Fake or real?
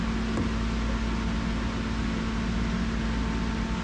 real